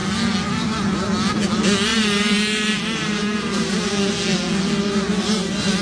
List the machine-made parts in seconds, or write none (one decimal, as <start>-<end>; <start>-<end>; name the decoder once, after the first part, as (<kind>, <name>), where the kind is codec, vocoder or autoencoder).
1.9-3.9 (vocoder, BigVGAN v2)